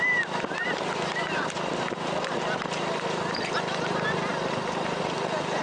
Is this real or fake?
real